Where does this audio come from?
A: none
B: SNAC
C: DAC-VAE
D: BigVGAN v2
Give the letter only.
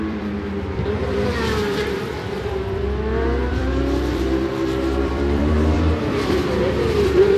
D